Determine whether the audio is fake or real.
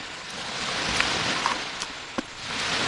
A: real